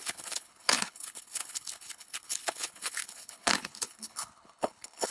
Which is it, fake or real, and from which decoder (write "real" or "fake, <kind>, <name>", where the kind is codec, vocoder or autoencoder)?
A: fake, codec, HILCodec